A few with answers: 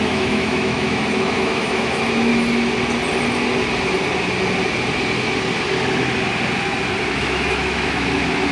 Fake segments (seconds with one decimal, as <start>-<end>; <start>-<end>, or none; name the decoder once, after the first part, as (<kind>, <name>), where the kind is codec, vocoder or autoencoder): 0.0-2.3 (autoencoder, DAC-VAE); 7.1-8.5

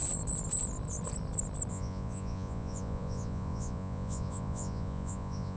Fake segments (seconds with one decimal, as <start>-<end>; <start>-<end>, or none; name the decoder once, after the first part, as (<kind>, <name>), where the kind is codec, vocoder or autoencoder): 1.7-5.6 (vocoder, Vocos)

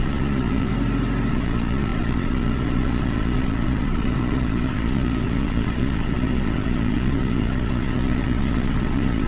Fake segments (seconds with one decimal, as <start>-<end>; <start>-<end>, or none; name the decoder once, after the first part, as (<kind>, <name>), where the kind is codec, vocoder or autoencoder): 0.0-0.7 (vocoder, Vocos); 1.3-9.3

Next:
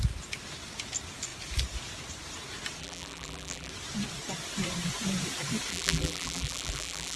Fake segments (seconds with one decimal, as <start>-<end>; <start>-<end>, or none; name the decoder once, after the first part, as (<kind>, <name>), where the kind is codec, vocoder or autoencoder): 2.8-3.7 (vocoder, BigVGAN v2); 5.7-7.2

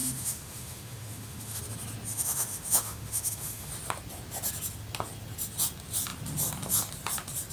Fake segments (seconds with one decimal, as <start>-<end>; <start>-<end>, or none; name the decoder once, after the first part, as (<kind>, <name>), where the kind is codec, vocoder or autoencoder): 0.0-1.6 (autoencoder, DAC-VAE); 2.1-3.7

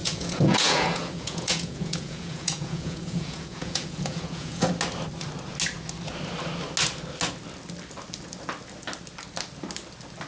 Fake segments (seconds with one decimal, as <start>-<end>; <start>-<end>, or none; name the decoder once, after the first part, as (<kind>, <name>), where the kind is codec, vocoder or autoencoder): 0.0-4.7 (vocoder, Vocos)

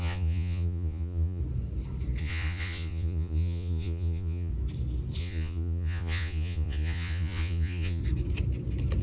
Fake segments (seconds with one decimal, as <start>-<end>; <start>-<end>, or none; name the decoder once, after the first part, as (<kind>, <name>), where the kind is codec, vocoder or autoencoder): 0.0-1.4 (vocoder, Vocos); 2.2-4.5; 5.2-8.0